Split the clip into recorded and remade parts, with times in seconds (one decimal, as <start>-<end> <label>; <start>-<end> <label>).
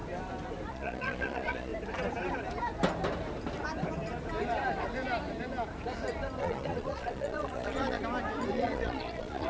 0.0-0.7 recorded; 0.7-1.7 remade; 1.7-6.4 recorded; 6.4-8.0 remade; 8.0-8.5 recorded; 8.5-9.5 remade